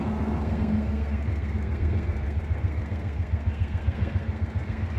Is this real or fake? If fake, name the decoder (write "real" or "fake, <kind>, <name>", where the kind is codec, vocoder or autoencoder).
fake, codec, SNAC